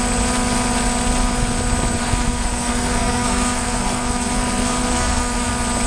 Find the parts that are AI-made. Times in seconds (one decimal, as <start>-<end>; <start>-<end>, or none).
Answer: 2.0-5.5